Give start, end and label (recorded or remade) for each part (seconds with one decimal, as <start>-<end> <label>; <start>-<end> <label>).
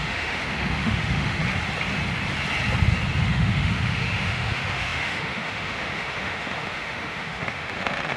0.0-1.4 remade; 1.4-3.2 recorded; 3.2-8.2 remade